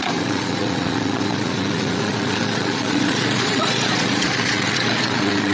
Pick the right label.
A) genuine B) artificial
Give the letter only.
B